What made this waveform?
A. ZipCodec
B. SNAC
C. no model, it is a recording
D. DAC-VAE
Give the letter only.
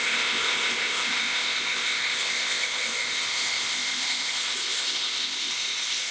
A